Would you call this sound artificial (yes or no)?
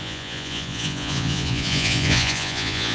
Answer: yes